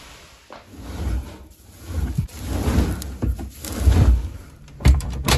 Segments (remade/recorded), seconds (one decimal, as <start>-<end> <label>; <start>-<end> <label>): 0.0-5.4 recorded